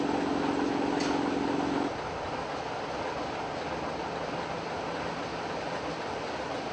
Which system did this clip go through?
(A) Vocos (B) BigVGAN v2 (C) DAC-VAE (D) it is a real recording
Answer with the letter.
D